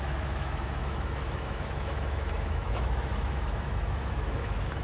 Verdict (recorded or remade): remade